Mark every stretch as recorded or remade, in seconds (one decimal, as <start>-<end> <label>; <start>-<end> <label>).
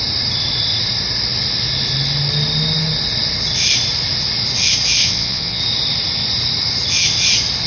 0.0-5.0 recorded; 5.0-5.6 remade; 5.6-7.7 recorded